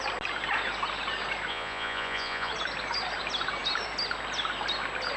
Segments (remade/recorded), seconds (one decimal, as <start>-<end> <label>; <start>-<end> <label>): 0.0-1.5 recorded; 1.5-2.5 remade; 2.5-5.2 recorded